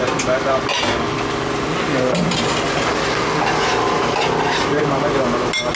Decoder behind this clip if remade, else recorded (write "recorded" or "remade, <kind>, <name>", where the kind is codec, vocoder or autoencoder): recorded